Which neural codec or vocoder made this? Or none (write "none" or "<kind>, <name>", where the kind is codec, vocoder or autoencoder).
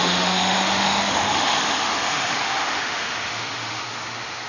autoencoder, DAC-VAE